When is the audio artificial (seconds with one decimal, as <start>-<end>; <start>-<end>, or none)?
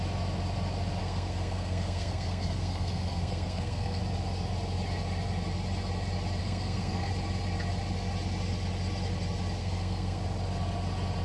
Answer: 1.0-4.0; 6.4-7.1; 9.6-10.2